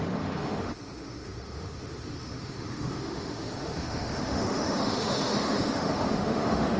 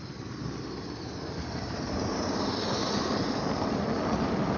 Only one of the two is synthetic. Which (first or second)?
first